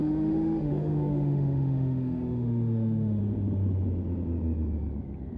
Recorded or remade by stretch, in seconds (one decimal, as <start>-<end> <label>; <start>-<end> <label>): 0.0-3.2 remade; 3.2-5.4 recorded